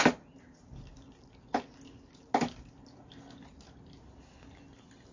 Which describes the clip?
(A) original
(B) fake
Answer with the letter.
A